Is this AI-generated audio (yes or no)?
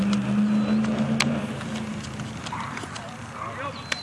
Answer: no